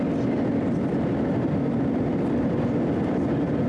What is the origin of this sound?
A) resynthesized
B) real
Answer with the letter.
A